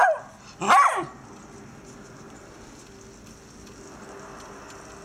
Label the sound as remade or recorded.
recorded